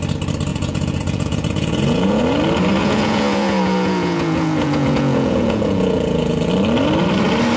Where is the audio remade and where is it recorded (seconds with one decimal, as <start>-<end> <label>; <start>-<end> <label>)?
0.0-0.5 recorded; 0.5-2.2 remade; 2.2-2.8 recorded; 2.8-6.5 remade; 6.5-7.6 recorded